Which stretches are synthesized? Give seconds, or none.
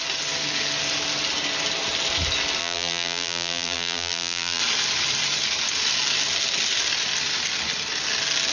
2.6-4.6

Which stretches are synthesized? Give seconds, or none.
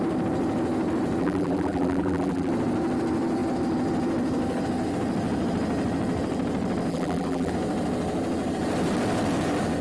1.2-2.5; 6.9-7.5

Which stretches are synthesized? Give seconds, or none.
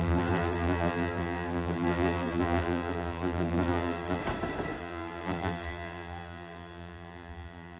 0.0-4.2; 4.8-7.8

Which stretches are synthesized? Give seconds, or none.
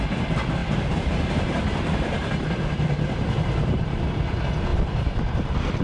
0.6-4.1